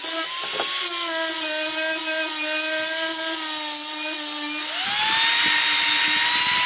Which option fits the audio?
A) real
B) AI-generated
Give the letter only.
A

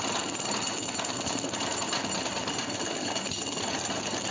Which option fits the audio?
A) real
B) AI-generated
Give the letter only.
A